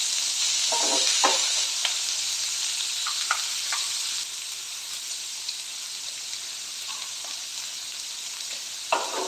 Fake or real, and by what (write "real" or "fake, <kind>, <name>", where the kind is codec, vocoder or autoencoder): real